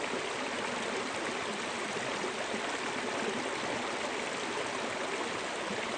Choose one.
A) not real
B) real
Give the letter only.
B